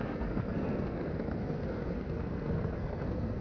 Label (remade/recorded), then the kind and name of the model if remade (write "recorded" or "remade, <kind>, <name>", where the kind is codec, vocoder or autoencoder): remade, codec, SNAC